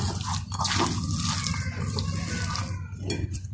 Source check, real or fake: real